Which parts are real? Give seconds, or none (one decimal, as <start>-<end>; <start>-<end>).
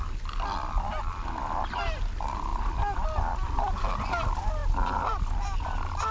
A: 0.0-6.1